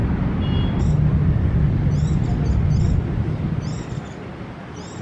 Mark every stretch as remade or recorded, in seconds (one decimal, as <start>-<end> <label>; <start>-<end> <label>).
0.0-5.0 recorded